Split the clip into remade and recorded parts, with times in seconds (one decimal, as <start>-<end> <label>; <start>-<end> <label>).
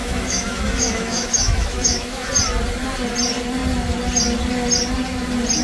0.0-2.3 remade; 2.3-5.6 recorded